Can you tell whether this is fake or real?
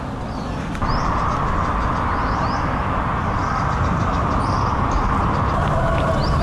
real